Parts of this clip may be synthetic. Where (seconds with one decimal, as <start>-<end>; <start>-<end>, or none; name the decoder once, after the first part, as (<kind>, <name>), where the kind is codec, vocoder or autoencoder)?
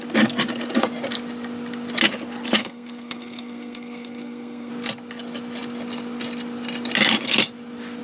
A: 2.6-4.7 (codec, SNAC)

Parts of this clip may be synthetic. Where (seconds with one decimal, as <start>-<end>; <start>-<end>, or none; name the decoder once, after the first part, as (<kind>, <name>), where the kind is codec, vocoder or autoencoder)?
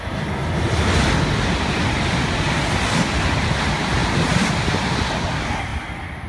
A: none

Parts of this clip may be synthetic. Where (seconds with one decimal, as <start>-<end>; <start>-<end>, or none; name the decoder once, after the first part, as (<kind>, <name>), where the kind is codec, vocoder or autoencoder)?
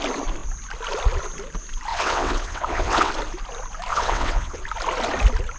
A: 1.9-3.1 (vocoder, WaveNeXt); 3.9-4.6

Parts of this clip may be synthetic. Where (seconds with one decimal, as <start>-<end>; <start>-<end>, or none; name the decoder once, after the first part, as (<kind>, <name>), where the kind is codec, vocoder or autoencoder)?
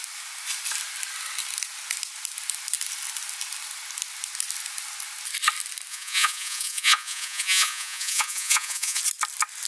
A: 5.9-9.0 (vocoder, Vocos)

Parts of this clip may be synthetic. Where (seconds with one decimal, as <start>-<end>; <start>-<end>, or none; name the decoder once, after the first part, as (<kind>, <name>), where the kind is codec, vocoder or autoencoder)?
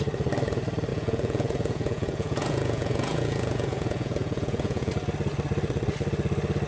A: 0.9-4.9 (vocoder, Vocos)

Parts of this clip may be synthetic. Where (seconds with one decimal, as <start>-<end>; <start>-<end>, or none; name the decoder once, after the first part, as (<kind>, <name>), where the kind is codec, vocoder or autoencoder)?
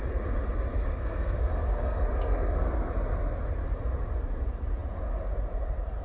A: 0.9-2.9 (codec, SNAC)